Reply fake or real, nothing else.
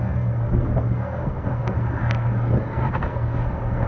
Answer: fake